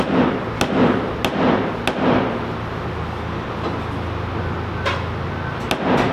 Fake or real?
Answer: real